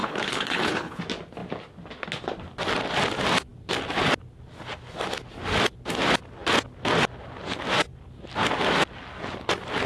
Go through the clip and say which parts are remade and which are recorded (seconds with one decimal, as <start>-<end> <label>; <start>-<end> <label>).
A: 0.0-1.0 remade; 1.0-9.9 recorded